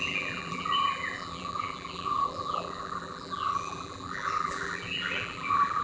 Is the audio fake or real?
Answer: fake